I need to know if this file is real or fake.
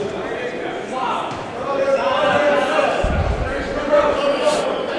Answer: fake